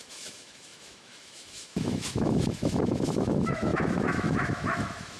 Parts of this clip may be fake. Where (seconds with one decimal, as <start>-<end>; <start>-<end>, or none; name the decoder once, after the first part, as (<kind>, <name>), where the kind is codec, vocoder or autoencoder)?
0.0-5.2 (autoencoder, DAC-VAE)